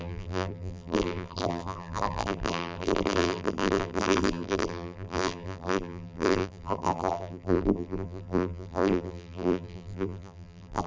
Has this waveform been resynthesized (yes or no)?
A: yes